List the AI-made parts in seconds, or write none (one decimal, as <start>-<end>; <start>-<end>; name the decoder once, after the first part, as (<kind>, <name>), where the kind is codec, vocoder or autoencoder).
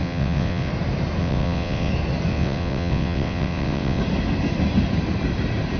0.0-0.7 (vocoder, WaveNeXt); 1.2-1.9; 2.3-4.0